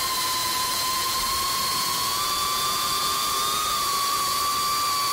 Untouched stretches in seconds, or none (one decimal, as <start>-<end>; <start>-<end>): 0.0-0.4; 1.2-1.7; 4.4-5.1